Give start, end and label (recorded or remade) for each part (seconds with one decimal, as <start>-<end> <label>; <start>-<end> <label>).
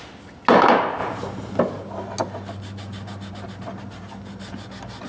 0.0-5.1 recorded